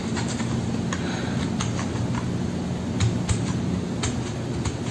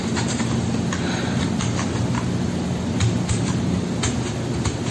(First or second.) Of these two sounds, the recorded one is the first